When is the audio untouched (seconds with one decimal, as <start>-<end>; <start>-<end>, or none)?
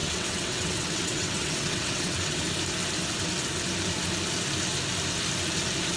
2.4-6.0